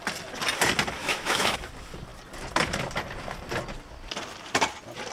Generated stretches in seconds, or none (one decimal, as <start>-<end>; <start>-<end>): 1.0-1.6

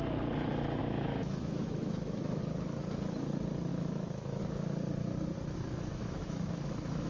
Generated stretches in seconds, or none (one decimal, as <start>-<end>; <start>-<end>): 0.8-2.4; 3.7-4.4; 5.9-7.1

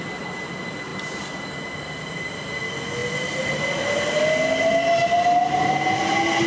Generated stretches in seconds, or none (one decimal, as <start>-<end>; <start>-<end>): none